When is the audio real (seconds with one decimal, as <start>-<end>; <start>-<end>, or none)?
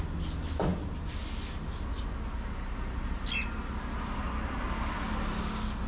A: 0.0-5.9